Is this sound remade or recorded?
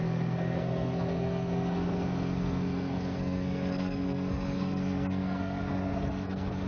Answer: remade